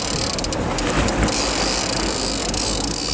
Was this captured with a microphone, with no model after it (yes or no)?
yes